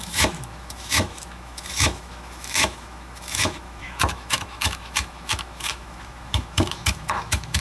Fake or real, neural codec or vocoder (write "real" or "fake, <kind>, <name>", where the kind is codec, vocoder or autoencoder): fake, autoencoder, DAC-VAE